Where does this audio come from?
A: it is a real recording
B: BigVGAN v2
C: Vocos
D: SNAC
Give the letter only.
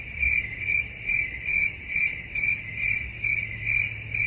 A